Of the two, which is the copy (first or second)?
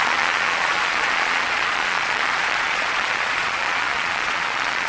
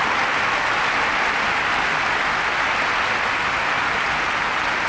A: first